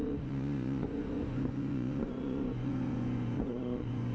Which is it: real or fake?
fake